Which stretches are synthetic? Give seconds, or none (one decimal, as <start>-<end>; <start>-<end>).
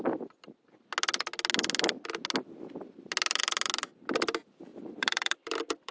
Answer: 4.7-5.9